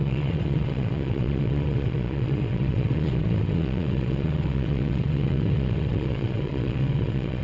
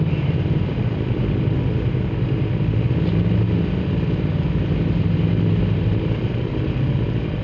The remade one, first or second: first